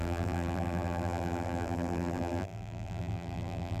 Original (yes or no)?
no